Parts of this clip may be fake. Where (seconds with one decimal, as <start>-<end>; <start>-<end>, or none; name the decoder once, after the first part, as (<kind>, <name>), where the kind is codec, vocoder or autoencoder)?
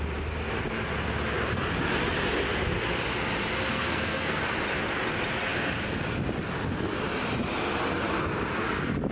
3.7-4.4 (codec, SNAC)